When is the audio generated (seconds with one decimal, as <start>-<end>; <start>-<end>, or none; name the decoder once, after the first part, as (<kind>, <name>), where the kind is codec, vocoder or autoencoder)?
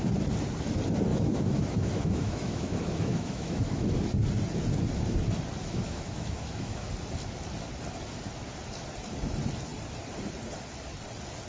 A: 1.1-4.0 (autoencoder, DAC-VAE); 5.6-6.9